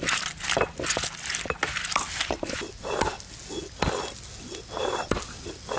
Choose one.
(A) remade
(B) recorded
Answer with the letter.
B